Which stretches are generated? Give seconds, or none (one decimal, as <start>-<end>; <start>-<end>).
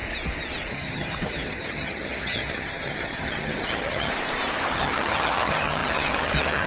0.7-4.1; 4.7-6.7